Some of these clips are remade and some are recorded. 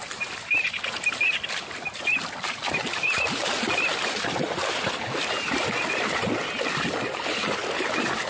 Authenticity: recorded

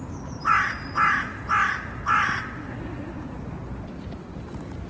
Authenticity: recorded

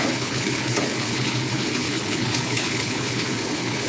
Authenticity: remade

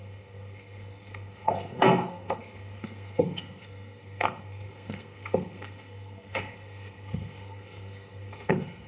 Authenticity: remade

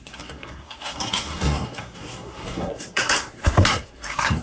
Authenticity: remade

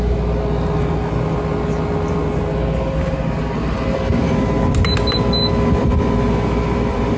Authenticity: recorded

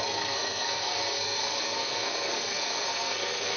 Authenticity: remade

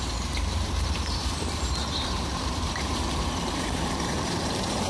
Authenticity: remade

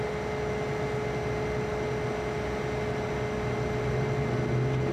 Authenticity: recorded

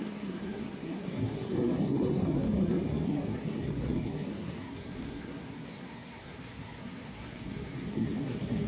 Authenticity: remade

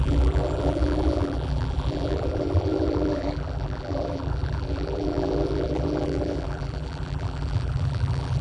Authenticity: remade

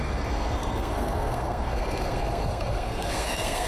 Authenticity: remade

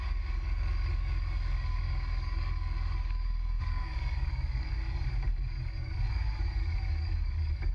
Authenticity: remade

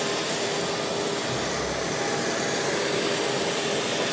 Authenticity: recorded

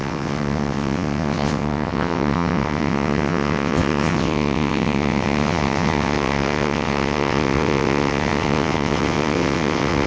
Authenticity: remade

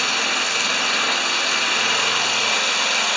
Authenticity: recorded